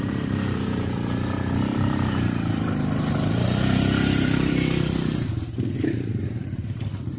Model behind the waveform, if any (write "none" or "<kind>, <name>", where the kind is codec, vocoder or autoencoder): vocoder, BigVGAN v2